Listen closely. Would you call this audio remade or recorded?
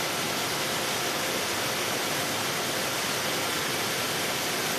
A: recorded